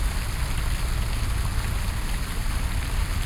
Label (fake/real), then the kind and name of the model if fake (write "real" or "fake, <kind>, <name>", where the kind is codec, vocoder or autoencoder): real